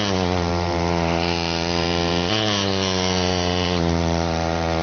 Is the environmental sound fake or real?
fake